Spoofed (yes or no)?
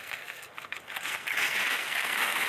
yes